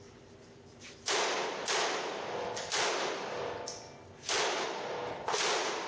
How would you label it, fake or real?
real